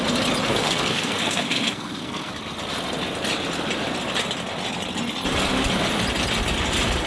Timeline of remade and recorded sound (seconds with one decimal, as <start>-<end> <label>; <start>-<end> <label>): 0.0-0.5 recorded; 0.5-2.3 remade; 2.3-7.1 recorded